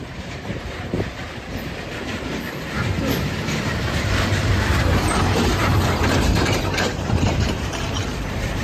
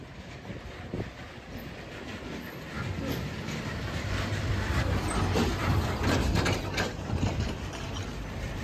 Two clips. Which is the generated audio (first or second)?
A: first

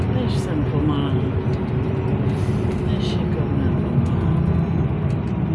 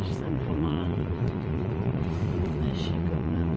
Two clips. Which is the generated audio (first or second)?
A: second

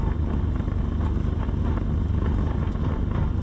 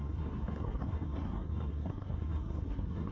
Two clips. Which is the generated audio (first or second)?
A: second